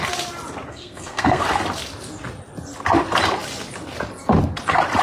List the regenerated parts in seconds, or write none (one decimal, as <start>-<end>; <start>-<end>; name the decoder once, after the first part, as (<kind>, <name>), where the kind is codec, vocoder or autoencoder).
0.7-1.4 (codec, SNAC)